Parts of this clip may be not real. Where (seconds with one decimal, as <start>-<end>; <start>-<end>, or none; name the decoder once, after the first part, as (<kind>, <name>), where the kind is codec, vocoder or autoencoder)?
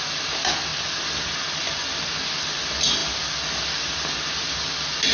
none